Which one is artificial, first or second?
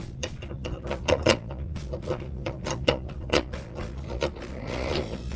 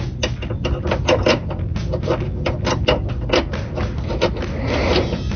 first